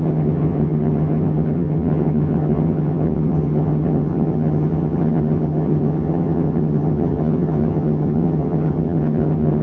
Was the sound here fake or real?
fake